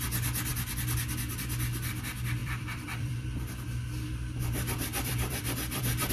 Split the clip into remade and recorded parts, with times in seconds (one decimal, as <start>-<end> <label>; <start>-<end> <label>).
0.0-2.4 recorded; 2.4-6.1 remade